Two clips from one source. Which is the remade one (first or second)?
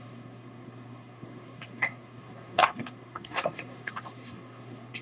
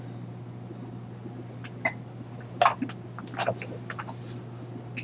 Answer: first